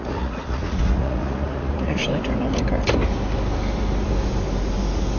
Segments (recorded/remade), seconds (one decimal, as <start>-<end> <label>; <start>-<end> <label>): 0.0-2.0 remade; 2.0-5.2 recorded